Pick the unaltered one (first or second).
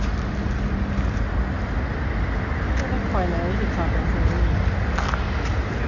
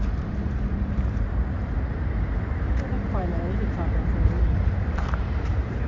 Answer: first